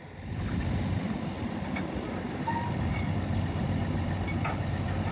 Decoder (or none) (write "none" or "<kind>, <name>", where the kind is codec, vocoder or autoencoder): none